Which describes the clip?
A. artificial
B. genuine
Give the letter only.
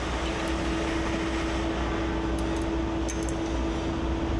B